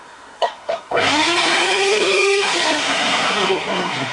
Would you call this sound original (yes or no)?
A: no